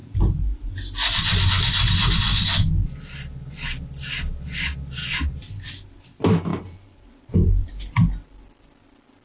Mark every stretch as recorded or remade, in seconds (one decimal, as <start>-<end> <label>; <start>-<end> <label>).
0.0-0.7 remade; 0.7-6.5 recorded; 6.5-7.7 remade; 7.7-9.2 recorded